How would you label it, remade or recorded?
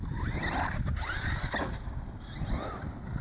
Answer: recorded